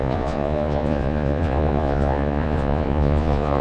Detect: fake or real fake